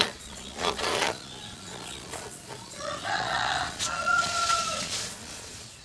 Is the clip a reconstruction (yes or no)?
yes